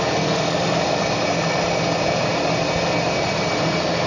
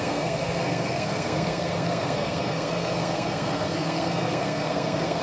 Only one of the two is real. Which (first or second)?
first